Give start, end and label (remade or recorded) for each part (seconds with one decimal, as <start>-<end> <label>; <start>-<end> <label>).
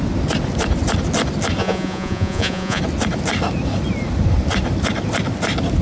0.0-1.6 recorded; 1.6-2.8 remade; 2.8-5.8 recorded